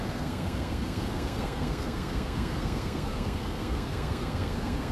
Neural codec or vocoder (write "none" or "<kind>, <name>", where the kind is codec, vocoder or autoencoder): codec, SNAC